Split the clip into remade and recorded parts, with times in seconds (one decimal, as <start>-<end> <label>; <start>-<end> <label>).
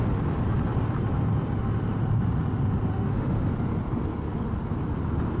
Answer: 0.0-2.9 recorded; 2.9-3.5 remade; 3.5-5.4 recorded